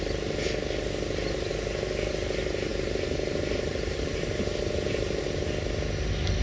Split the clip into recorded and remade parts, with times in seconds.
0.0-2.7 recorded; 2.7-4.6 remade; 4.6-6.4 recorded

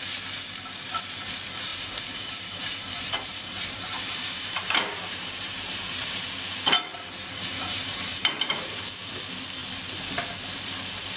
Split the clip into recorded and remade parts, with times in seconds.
0.0-1.7 recorded; 1.7-6.3 remade; 6.3-6.9 recorded; 6.9-8.9 remade; 8.9-11.2 recorded

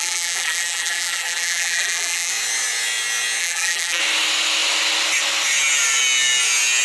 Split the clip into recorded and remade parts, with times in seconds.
0.0-2.3 remade; 2.3-3.4 recorded; 3.4-4.0 remade; 4.0-6.8 recorded

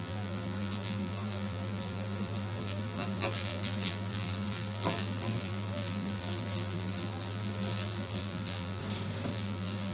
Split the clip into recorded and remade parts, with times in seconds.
0.0-8.8 remade; 8.8-9.3 recorded; 9.3-9.9 remade

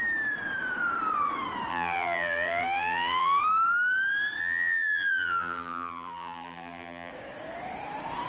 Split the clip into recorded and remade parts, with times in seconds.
0.0-1.7 recorded; 1.7-3.4 remade; 3.4-4.4 recorded; 4.4-7.1 remade; 7.1-8.3 recorded

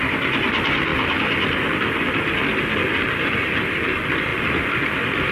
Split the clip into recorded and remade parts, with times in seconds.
0.0-4.3 recorded; 4.3-5.3 remade